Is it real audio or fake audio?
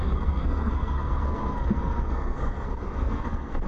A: fake